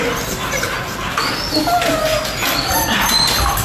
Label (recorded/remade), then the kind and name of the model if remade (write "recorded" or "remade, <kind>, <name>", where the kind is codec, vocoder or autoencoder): recorded